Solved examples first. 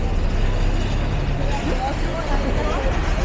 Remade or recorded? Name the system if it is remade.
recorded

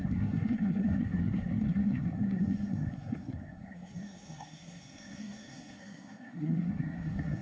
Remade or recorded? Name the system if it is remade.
remade, codec, SNAC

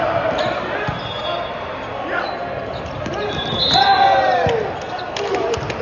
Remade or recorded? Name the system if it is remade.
recorded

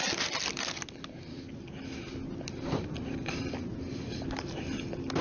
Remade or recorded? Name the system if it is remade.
recorded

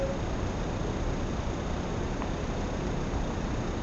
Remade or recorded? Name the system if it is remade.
recorded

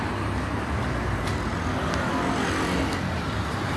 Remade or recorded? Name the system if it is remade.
recorded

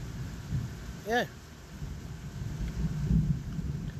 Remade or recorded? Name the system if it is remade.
recorded